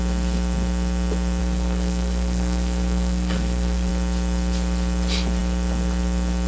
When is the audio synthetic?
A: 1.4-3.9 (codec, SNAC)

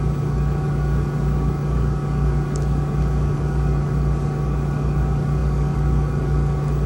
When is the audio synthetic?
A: 0.0-6.9 (codec, DAC)

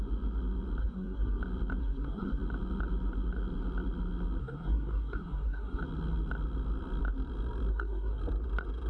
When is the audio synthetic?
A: 0.8-1.4 (codec, SNAC); 1.8-2.4; 4.4-5.8; 7.7-8.2

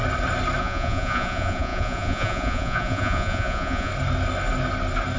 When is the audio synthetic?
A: 0.6-3.9 (vocoder, Vocos)